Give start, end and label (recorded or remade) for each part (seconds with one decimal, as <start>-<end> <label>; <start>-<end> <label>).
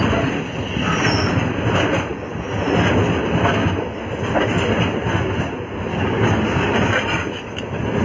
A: 0.0-5.9 recorded; 5.9-6.7 remade; 6.7-8.0 recorded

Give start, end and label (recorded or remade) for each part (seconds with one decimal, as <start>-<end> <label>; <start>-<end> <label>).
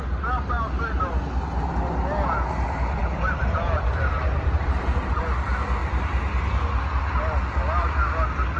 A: 0.0-3.0 recorded; 3.0-5.2 remade; 5.2-8.6 recorded